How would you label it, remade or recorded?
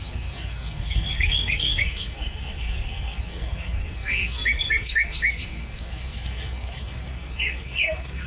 remade